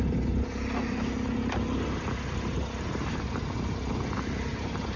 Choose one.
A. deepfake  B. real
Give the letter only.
B